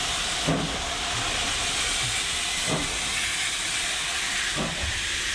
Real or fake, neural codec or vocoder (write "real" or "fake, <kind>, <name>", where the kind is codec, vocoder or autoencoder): real